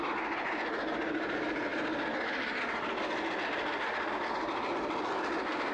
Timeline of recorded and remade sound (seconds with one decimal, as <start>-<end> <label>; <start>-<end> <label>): 0.0-5.7 recorded